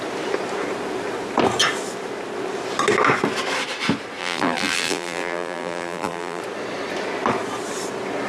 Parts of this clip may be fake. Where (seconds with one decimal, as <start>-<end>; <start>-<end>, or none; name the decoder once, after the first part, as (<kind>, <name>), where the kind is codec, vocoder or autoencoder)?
4.2-6.4 (vocoder, BigVGAN v2)